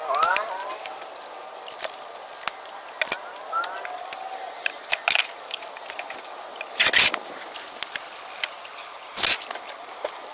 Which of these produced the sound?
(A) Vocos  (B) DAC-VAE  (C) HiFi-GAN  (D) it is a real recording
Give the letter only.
D